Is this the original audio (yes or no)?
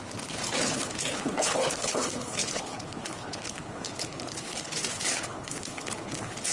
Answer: no